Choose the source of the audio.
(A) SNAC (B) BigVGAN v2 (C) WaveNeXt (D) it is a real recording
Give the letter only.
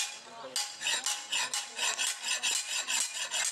D